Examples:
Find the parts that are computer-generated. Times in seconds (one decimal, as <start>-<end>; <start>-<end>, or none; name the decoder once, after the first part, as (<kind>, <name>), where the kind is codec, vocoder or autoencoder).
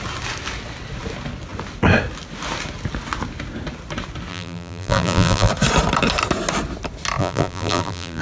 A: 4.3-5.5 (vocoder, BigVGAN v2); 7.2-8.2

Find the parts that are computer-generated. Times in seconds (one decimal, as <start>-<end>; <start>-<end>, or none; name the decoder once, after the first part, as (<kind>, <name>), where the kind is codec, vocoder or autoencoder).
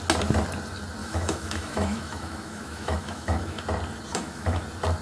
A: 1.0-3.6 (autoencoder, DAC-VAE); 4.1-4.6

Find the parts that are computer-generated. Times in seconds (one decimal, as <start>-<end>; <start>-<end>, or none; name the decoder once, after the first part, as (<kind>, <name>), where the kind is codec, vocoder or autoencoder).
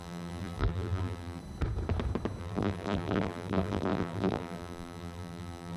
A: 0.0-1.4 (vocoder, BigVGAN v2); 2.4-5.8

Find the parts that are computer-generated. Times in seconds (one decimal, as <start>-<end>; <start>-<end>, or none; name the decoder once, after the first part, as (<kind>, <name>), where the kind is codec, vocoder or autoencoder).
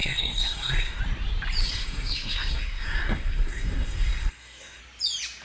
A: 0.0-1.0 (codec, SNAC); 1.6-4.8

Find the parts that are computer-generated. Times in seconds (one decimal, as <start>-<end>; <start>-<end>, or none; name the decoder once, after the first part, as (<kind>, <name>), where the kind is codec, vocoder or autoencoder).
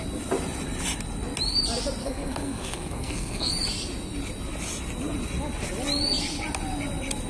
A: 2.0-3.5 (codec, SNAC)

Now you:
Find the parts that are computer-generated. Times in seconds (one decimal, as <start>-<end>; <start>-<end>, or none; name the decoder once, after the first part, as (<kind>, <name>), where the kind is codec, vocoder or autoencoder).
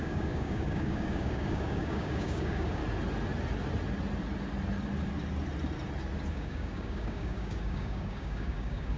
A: 0.0-2.8 (codec, DAC); 6.3-9.0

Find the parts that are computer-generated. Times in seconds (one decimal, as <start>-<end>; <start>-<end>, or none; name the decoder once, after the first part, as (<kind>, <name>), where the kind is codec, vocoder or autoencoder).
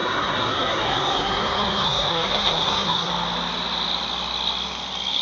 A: 0.0-3.1 (codec, SNAC)